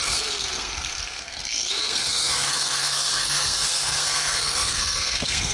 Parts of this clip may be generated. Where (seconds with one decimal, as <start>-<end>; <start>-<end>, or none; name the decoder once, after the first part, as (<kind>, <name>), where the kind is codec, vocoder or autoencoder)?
0.0-5.5 (codec, SNAC)